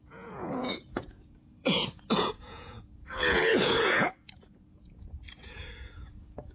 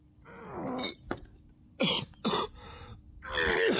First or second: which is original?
second